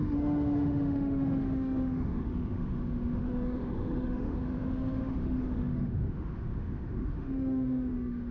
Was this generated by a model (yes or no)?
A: yes